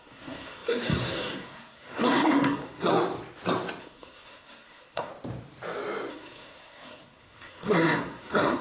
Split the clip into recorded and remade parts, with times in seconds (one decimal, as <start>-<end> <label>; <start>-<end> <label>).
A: 0.0-2.9 remade; 2.9-3.8 recorded; 3.8-5.1 remade; 5.1-6.1 recorded; 6.1-8.6 remade